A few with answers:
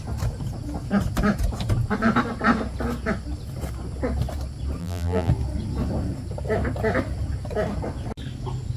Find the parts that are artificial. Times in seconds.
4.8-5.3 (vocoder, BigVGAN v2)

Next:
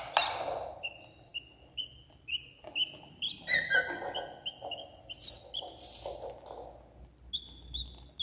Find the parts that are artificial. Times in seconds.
none

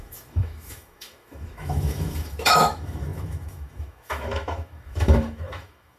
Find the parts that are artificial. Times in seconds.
0.0-6.0 (autoencoder, DAC-VAE)

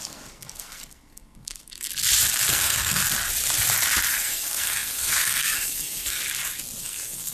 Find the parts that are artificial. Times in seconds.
0.0-1.9 (codec, SNAC); 2.5-3.0; 4.1-6.2; 6.8-7.3